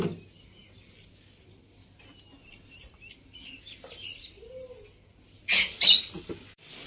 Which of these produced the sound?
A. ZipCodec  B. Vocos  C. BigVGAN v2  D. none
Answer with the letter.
D